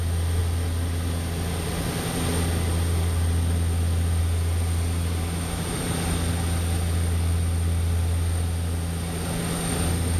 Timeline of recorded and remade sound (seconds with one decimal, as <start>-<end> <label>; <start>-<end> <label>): 0.0-10.2 recorded